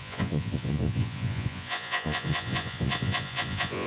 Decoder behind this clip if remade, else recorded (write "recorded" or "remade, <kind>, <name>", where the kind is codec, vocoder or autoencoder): remade, vocoder, Vocos